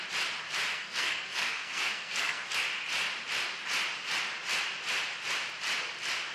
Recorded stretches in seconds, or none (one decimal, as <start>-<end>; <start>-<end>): 0.0-0.7; 2.5-6.3